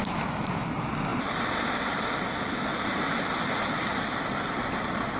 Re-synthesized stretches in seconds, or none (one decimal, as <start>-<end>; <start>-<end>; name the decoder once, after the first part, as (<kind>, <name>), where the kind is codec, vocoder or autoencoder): none